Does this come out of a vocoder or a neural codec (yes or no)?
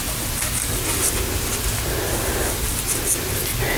no